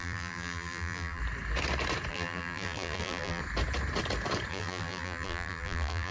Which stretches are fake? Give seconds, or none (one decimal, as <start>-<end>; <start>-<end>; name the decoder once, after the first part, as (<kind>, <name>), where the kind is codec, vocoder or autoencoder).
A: 0.0-1.2 (vocoder, BigVGAN v2); 2.1-3.4; 4.5-6.1